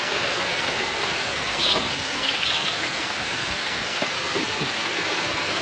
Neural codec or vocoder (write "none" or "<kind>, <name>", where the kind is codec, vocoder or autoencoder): codec, SNAC